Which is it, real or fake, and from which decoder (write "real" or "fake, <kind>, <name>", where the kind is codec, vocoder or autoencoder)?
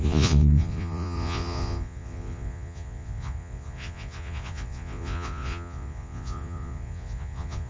fake, vocoder, Vocos